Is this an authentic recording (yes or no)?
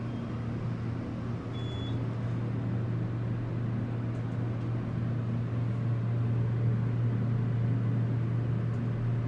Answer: yes